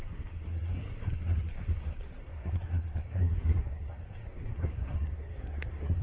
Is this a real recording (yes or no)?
no